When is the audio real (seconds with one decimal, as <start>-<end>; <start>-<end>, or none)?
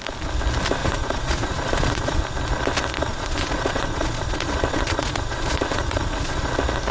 0.0-0.8; 2.2-3.1; 6.5-6.9